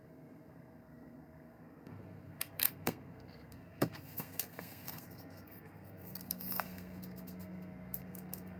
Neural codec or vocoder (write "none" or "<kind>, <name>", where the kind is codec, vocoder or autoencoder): codec, SNAC